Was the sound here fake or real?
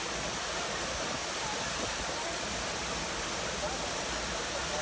real